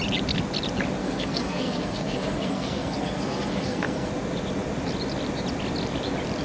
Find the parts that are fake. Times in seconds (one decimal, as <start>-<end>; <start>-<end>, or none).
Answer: 1.0-4.1